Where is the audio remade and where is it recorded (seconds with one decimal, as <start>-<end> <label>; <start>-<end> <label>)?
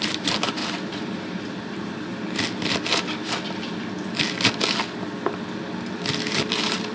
0.0-2.1 remade; 2.1-5.9 recorded; 5.9-6.9 remade